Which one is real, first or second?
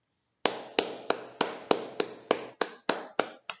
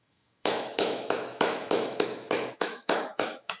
first